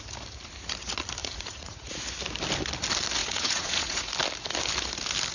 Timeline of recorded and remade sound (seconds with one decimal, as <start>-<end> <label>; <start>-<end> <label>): 0.0-1.2 recorded; 1.2-1.9 remade; 1.9-3.2 recorded; 3.2-4.1 remade; 4.1-5.3 recorded

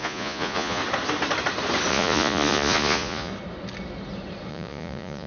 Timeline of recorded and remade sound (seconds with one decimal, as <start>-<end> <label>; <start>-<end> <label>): 0.0-0.8 remade; 0.8-1.9 recorded; 1.9-3.3 remade; 3.3-4.5 recorded; 4.5-5.3 remade

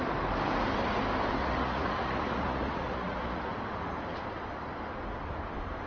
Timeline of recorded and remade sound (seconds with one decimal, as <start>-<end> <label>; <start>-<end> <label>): 0.0-1.4 recorded; 1.4-3.5 remade; 3.5-5.9 recorded

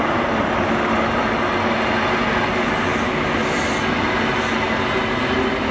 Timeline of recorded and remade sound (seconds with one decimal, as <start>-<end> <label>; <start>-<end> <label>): 0.0-5.7 recorded

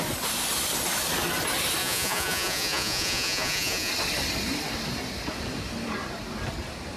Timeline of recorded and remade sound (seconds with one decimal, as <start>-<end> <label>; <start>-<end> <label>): 0.0-1.8 recorded; 1.8-3.9 remade; 3.9-7.0 recorded